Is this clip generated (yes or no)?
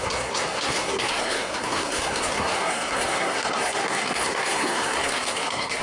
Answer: yes